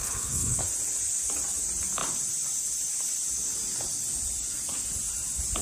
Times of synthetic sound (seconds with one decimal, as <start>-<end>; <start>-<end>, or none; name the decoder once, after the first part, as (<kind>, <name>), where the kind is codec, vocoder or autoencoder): 0.0-0.6 (codec, SNAC)